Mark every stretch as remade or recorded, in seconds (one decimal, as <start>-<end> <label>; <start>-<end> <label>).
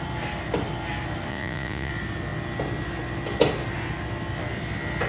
0.0-1.3 recorded; 1.3-1.9 remade; 1.9-5.1 recorded